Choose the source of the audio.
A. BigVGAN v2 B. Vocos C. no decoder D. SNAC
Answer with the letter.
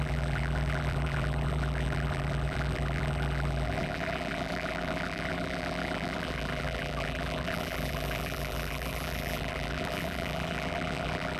A